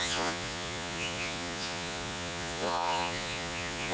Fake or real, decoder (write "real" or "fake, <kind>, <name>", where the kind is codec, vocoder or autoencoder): fake, vocoder, Vocos